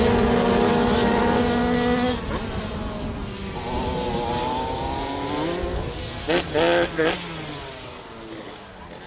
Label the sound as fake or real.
real